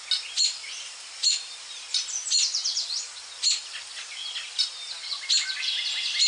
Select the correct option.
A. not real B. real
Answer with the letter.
B